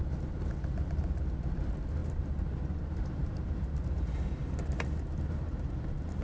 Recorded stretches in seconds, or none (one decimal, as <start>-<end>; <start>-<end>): 0.0-2.0; 5.7-6.2